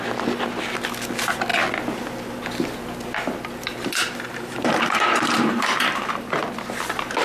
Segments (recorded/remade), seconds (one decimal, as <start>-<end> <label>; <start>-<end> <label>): 0.0-3.7 recorded; 3.7-6.4 remade; 6.4-7.2 recorded